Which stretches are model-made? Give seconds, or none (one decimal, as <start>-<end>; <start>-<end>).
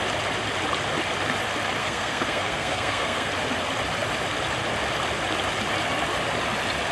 1.8-3.3